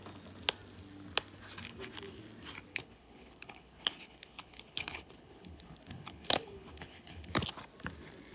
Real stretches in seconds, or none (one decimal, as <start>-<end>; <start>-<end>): 0.0-2.7; 7.3-8.3